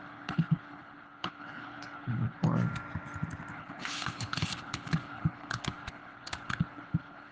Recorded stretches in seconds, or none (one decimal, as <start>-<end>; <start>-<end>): 2.4-3.5